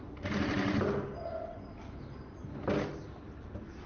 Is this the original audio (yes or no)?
yes